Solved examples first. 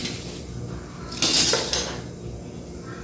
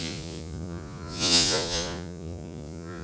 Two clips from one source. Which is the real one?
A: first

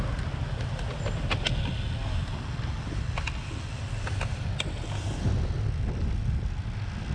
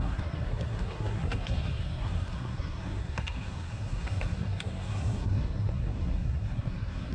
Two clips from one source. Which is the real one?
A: first